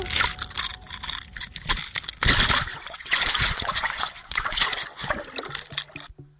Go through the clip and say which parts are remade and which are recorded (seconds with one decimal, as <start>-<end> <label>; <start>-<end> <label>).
0.0-2.7 recorded; 2.7-5.1 remade; 5.1-6.4 recorded